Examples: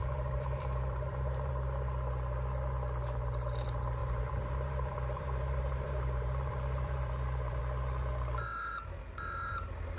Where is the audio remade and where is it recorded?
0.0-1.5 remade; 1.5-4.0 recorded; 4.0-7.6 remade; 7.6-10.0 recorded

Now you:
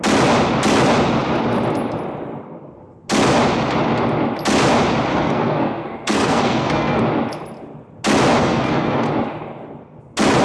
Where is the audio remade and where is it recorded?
0.0-5.1 recorded; 5.1-7.0 remade; 7.0-8.4 recorded; 8.4-9.1 remade; 9.1-10.4 recorded

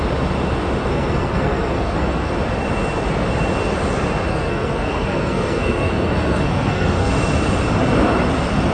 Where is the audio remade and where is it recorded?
0.0-0.8 recorded; 0.8-2.3 remade; 2.3-4.3 recorded; 4.3-7.1 remade; 7.1-8.7 recorded

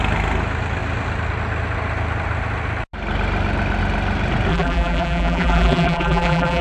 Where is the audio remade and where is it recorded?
0.0-4.5 recorded; 4.5-6.6 remade

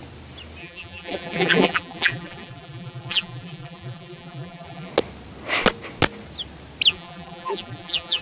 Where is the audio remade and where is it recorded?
0.0-0.6 recorded; 0.6-4.9 remade; 4.9-6.9 recorded; 6.9-8.2 remade

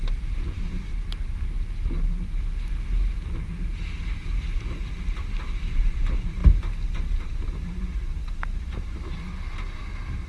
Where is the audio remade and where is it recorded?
0.0-0.9 remade; 0.9-3.9 recorded; 3.9-6.4 remade; 6.4-7.0 recorded; 7.0-10.3 remade

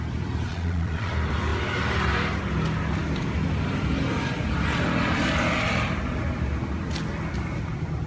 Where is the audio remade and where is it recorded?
0.0-0.5 recorded; 0.5-1.1 remade; 1.1-8.1 recorded